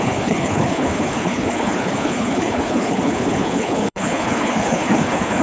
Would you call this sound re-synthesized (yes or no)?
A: yes